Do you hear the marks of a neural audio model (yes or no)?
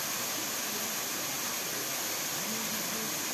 no